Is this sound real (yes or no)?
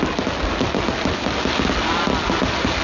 yes